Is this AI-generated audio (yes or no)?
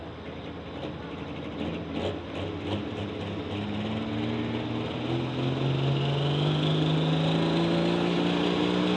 no